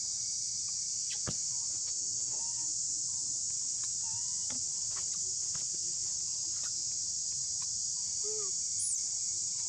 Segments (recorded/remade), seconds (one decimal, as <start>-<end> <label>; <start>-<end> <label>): 0.0-1.8 recorded; 1.8-2.4 remade; 2.4-9.7 recorded